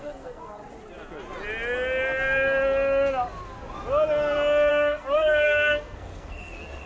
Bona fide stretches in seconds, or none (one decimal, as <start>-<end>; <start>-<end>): 0.6-4.7